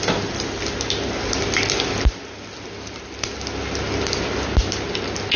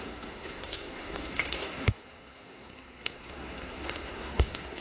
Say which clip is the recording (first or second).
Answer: first